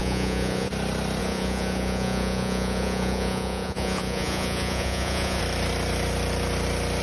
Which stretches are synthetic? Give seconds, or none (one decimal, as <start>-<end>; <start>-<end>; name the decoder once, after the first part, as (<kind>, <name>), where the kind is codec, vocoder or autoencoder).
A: 0.0-0.7 (vocoder, Vocos); 1.2-5.4